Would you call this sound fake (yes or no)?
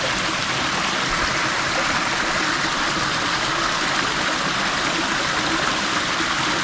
no